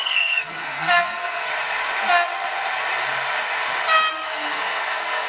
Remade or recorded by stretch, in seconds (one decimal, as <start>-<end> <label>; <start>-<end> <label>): 0.0-1.5 remade; 1.5-4.1 recorded; 4.1-5.3 remade

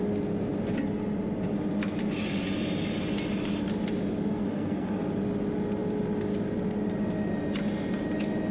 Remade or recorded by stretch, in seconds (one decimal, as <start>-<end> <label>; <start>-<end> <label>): 0.0-4.3 recorded; 4.3-5.0 remade; 5.0-8.5 recorded